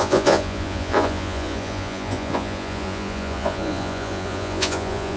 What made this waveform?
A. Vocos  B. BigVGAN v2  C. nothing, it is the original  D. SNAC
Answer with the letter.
A